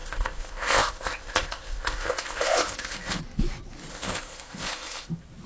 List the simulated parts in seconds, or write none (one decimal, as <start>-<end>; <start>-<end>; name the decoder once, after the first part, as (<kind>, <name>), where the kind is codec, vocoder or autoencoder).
0.0-3.2 (codec, ZipCodec); 3.9-5.1